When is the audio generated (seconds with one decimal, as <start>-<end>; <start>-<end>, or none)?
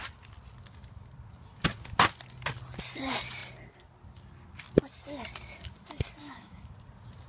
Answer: 6.2-6.7